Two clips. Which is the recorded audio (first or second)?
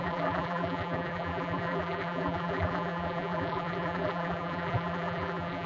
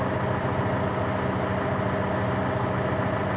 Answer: second